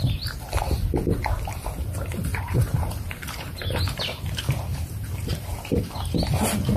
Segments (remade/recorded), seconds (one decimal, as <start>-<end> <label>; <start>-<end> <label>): 0.0-2.3 recorded; 2.3-4.0 remade; 4.0-4.7 recorded; 4.7-5.8 remade; 5.8-6.8 recorded